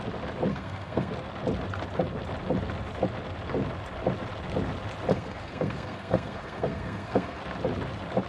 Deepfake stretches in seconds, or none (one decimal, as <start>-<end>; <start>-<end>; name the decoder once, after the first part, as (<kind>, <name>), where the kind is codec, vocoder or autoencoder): 0.5-1.1 (codec, SNAC); 5.1-7.4